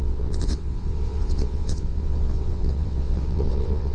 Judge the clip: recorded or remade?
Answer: remade